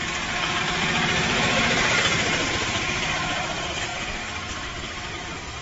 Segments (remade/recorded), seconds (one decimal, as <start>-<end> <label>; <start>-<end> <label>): 0.0-0.6 recorded; 0.6-5.6 remade

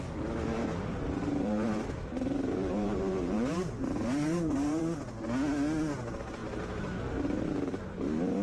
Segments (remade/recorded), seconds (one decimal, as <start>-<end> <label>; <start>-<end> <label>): 0.0-0.5 recorded; 0.5-4.8 remade; 4.8-6.4 recorded; 6.4-7.8 remade; 7.8-8.4 recorded

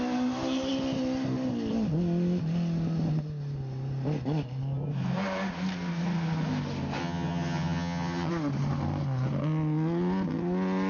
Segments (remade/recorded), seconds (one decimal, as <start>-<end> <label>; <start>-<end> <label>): 0.0-7.0 recorded; 7.0-8.3 remade; 8.3-10.9 recorded

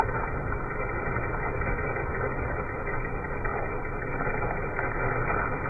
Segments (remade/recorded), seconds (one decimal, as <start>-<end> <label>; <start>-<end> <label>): 0.0-5.7 recorded

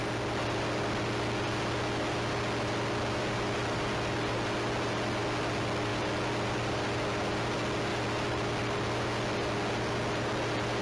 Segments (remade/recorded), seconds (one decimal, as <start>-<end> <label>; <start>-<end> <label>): 0.0-10.8 recorded

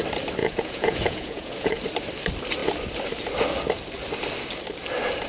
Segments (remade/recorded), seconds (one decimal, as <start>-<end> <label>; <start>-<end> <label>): 0.0-0.4 recorded; 0.4-1.8 remade; 1.8-5.3 recorded